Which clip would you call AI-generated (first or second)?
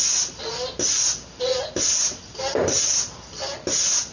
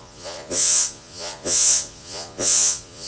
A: second